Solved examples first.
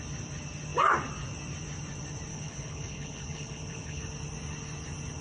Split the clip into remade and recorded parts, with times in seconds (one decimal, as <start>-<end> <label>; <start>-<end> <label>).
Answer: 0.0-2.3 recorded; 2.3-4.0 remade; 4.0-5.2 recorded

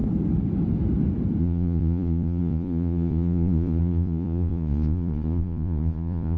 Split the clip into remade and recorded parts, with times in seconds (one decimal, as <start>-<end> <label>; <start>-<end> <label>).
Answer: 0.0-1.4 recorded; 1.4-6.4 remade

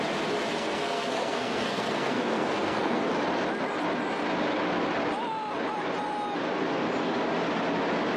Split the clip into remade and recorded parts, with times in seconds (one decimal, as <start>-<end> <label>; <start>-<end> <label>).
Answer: 0.0-0.5 recorded; 0.5-3.1 remade; 3.1-8.2 recorded

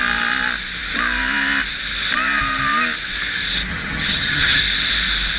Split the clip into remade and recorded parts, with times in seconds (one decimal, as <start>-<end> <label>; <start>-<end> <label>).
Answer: 0.0-3.7 recorded; 3.7-4.6 remade; 4.6-5.4 recorded

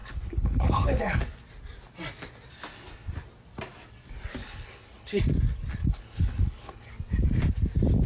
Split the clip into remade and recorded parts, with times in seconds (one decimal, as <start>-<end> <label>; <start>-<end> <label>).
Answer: 0.0-1.2 remade; 1.2-4.4 recorded; 4.4-5.2 remade; 5.2-5.8 recorded; 5.8-6.9 remade; 6.9-8.1 recorded

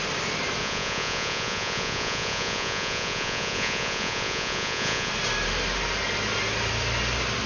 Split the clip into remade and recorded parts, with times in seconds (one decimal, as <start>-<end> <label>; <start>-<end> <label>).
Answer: 0.0-0.6 recorded; 0.6-5.1 remade; 5.1-7.5 recorded

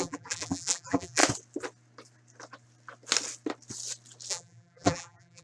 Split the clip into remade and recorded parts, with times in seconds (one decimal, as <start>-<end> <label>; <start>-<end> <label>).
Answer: 0.0-1.2 remade; 1.2-4.3 recorded; 4.3-5.4 remade